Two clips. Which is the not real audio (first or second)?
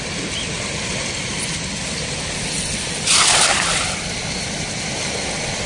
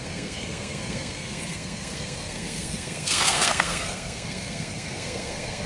second